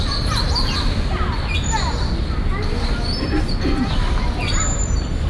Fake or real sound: real